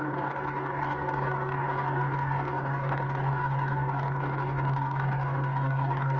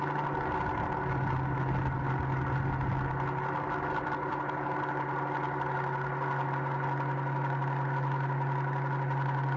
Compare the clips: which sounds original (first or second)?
second